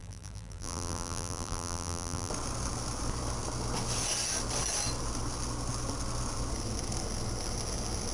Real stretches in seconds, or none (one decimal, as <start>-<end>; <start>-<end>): 2.3-8.1